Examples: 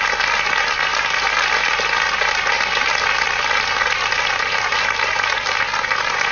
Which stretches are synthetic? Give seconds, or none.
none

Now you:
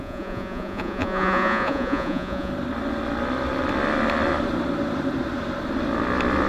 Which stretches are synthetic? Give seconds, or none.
0.0-2.5 (vocoder, Vocos)

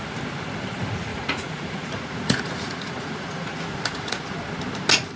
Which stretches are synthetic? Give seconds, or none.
1.1-4.2 (vocoder, Vocos)

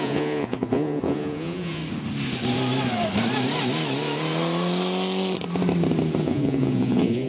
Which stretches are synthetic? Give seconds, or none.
0.0-1.8 (vocoder, Vocos); 6.2-7.3

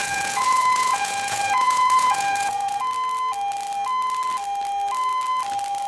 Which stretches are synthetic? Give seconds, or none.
0.0-2.8 (vocoder, Vocos)